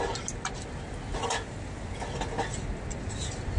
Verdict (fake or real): real